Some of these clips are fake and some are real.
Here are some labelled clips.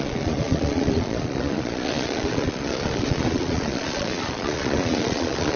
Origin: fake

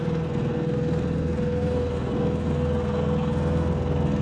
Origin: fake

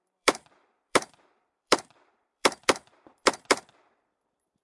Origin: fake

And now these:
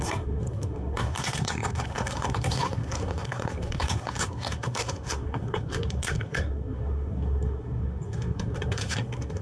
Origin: fake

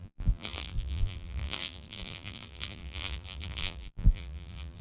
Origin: fake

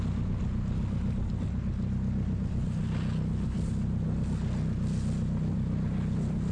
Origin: real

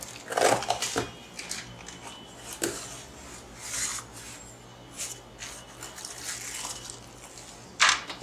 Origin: real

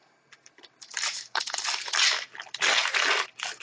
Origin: real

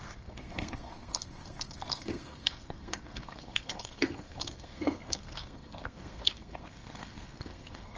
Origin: fake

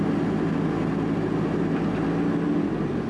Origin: real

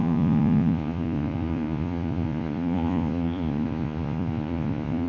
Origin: fake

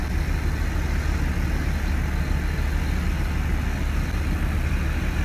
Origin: real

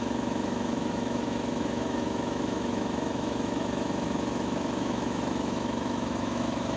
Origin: fake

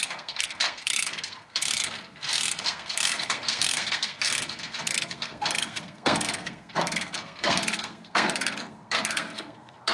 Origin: fake